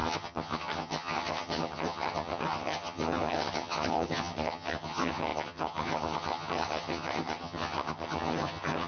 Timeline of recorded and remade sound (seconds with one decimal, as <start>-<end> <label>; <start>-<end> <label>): 0.0-8.9 remade